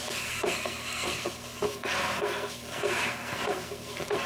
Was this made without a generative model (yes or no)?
no